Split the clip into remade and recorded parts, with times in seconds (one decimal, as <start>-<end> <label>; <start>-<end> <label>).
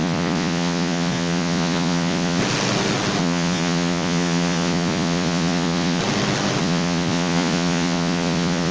0.0-2.4 remade; 2.4-3.2 recorded; 3.2-6.0 remade; 6.0-6.6 recorded; 6.6-8.7 remade